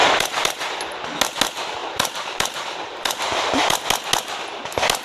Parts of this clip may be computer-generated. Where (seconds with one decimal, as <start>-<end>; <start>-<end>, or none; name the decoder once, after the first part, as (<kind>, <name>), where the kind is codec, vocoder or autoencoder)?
0.0-0.7 (vocoder, BigVGAN v2); 1.8-3.9